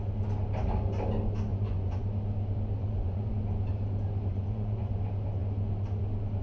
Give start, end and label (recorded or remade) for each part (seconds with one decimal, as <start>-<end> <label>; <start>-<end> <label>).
0.0-1.5 recorded; 1.5-2.0 remade; 2.0-2.8 recorded; 2.8-3.3 remade; 3.3-4.3 recorded; 4.3-4.9 remade; 4.9-6.4 recorded